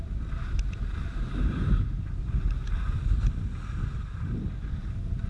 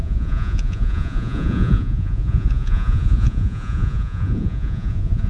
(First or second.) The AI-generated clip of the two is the second